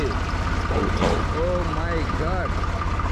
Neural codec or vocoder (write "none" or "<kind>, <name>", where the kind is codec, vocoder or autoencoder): none